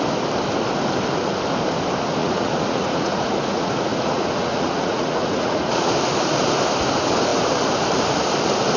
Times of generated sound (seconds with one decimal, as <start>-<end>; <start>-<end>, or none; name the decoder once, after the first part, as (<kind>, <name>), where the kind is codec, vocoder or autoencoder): 2.2-5.9 (vocoder, Vocos)